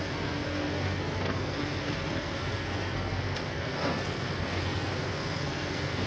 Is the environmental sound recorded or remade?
remade